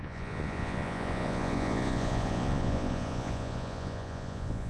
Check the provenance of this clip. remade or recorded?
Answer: remade